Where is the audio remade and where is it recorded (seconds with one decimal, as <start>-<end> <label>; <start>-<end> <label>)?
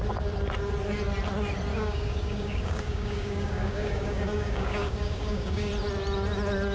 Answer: 0.0-1.7 recorded; 1.7-5.7 remade; 5.7-6.7 recorded